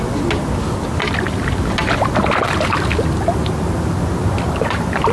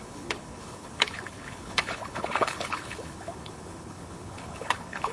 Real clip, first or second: first